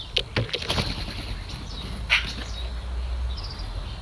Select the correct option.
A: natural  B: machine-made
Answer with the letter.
A